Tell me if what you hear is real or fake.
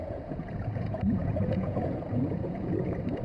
fake